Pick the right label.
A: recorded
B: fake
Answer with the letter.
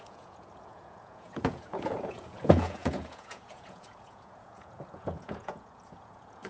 B